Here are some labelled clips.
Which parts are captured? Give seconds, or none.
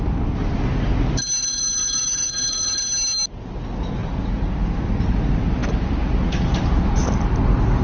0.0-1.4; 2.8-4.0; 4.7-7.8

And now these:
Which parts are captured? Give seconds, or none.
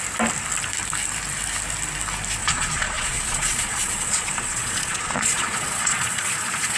0.0-2.4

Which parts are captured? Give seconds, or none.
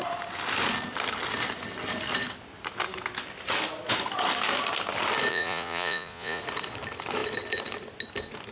0.0-5.3; 6.4-8.5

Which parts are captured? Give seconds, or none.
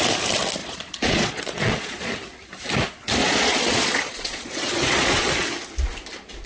0.0-0.6; 2.1-3.2; 5.5-6.5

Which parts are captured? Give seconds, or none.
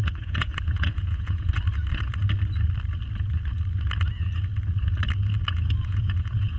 1.5-5.5